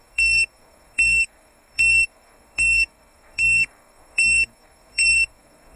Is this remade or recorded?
remade